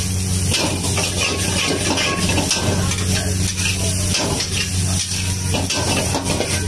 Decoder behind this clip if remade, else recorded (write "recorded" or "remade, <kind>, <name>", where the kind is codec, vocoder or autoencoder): recorded